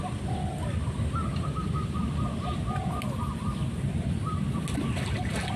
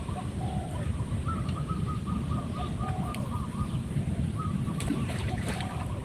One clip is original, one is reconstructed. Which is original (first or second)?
first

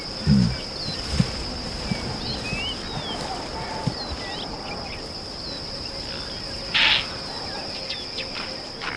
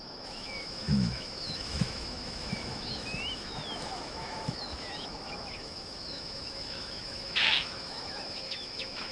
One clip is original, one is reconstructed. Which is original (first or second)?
first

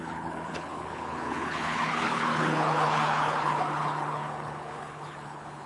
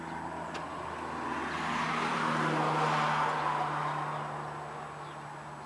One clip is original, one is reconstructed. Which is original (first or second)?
second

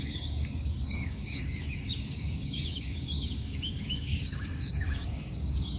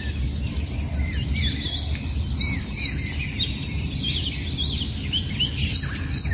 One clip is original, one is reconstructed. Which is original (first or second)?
second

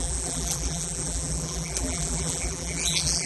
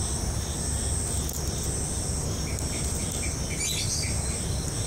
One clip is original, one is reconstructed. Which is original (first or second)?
second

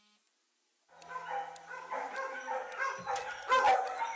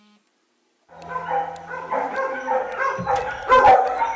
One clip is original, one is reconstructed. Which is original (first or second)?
first